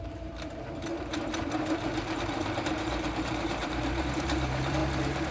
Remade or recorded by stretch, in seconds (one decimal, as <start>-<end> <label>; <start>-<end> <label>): 0.0-4.8 remade; 4.8-5.3 recorded